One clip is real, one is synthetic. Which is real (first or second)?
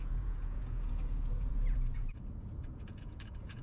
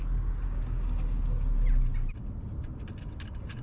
second